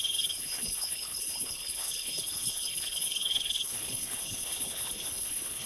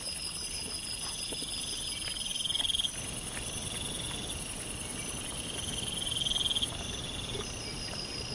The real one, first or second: second